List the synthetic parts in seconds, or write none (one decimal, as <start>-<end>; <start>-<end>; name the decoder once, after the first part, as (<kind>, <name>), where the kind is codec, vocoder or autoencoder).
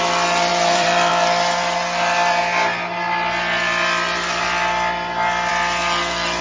0.5-1.1 (vocoder, BigVGAN v2)